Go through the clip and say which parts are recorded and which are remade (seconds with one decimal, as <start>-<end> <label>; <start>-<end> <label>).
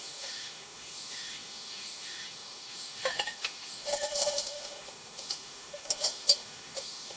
0.0-7.2 remade